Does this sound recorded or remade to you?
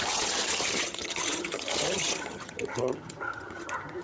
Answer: remade